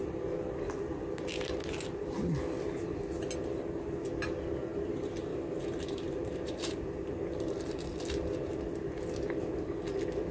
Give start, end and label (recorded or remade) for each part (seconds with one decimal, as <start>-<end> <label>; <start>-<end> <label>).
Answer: 0.0-4.7 recorded; 4.7-6.7 remade; 6.7-10.3 recorded

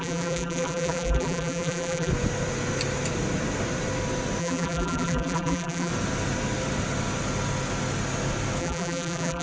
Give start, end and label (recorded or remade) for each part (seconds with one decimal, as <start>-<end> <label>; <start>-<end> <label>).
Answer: 0.0-2.1 remade; 2.1-4.4 recorded; 4.4-5.9 remade; 5.9-8.6 recorded; 8.6-9.4 remade

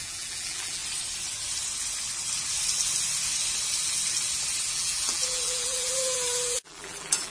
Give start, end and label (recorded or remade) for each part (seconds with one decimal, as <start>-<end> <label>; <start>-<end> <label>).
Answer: 0.0-0.8 remade; 0.8-4.7 recorded; 4.7-7.3 remade